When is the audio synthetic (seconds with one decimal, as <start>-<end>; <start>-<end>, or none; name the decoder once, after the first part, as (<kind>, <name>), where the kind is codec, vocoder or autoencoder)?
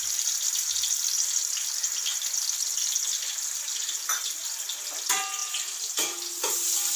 none